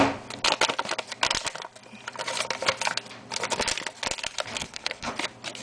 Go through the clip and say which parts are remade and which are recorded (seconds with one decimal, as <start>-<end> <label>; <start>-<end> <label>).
0.0-4.6 recorded; 4.6-5.1 remade; 5.1-5.6 recorded